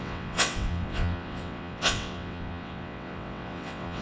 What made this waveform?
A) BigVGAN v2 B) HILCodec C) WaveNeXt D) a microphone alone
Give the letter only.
C